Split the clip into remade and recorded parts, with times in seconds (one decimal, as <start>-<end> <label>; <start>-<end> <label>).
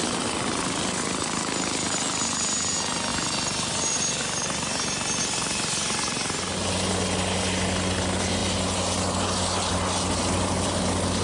0.0-11.2 recorded